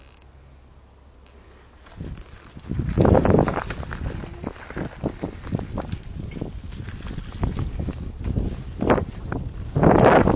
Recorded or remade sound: recorded